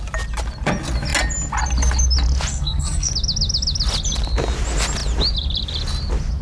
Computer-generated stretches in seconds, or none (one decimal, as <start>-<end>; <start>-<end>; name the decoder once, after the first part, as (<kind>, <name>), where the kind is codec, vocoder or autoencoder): 2.5-3.1 (codec, SNAC)